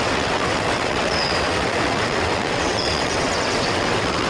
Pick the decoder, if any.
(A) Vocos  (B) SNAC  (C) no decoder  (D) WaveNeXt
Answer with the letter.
D